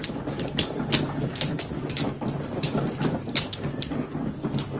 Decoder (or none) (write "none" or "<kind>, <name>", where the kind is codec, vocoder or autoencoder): none